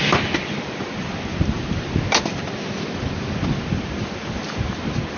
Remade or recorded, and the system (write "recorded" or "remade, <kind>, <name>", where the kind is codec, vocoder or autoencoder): recorded